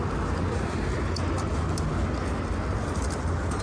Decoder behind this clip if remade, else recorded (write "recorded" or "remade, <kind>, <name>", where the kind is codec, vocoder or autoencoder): recorded